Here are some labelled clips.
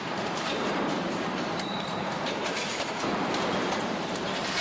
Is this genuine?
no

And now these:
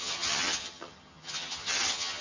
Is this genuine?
no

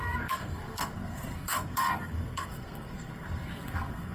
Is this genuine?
no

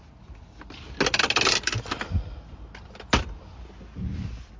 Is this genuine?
yes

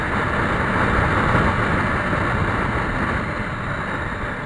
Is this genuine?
yes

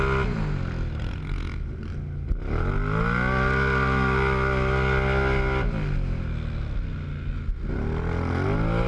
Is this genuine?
yes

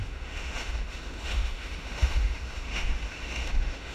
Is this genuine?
no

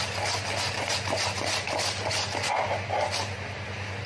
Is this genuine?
yes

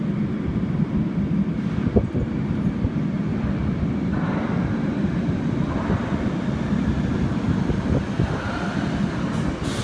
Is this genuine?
yes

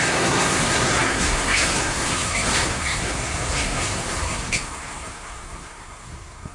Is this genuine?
no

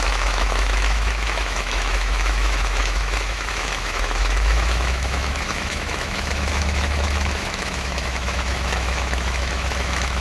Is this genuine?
no